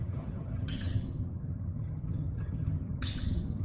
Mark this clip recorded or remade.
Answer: remade